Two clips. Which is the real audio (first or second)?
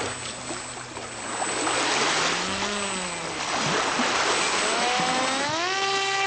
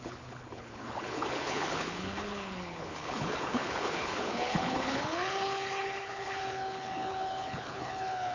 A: first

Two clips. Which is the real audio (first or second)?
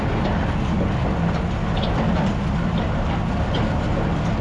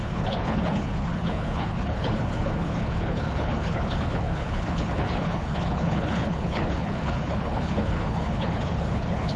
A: first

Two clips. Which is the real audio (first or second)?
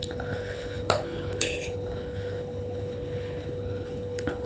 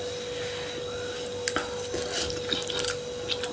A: second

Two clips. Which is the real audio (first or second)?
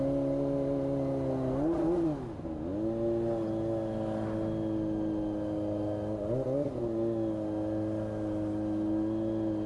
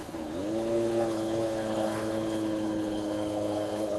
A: first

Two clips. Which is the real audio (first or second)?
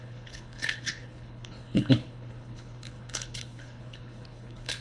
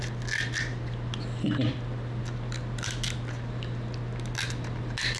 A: second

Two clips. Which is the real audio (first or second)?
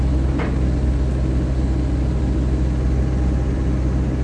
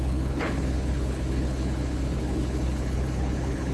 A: first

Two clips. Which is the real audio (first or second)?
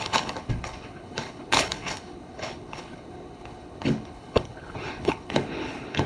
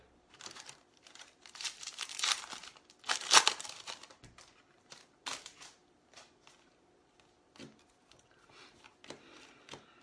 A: second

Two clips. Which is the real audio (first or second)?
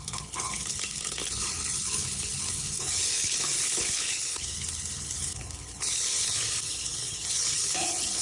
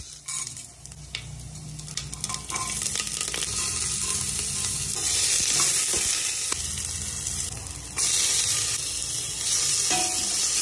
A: second